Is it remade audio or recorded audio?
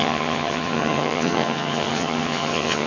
remade